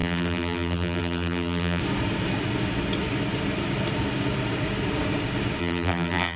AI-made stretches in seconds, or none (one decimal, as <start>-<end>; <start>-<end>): 0.0-1.8; 5.6-6.4